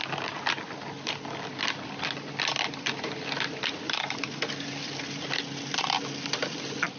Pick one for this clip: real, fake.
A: real